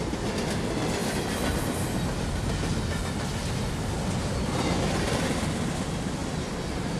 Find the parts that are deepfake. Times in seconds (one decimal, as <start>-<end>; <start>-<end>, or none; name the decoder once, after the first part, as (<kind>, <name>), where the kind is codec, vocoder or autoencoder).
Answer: none